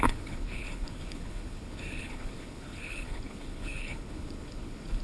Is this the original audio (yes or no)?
no